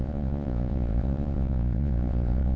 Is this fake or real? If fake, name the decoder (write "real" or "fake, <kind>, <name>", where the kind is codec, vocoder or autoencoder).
fake, vocoder, Vocos